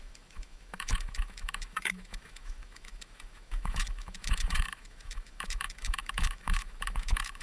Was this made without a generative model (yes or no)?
no